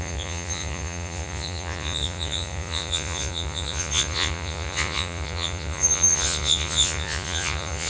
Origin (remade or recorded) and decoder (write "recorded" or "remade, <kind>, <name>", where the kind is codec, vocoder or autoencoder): remade, vocoder, Vocos